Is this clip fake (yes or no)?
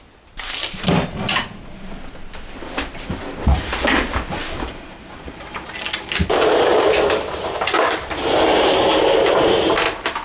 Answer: no